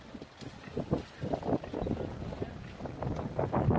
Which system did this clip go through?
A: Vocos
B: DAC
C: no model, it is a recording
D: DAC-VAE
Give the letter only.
C